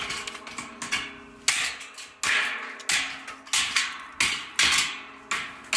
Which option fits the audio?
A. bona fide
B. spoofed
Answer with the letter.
A